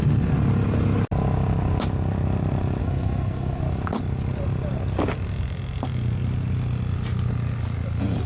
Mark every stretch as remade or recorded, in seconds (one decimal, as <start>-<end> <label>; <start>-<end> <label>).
0.0-2.8 recorded; 2.8-3.6 remade; 3.6-8.3 recorded